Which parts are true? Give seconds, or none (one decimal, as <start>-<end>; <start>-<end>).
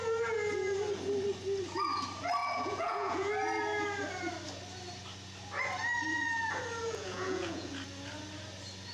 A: 0.0-2.4; 3.3-6.8; 7.7-8.9